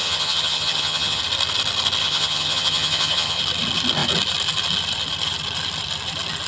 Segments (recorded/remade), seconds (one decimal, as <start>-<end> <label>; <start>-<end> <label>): 0.0-1.2 remade; 1.2-2.0 recorded; 2.0-3.4 remade; 3.4-6.5 recorded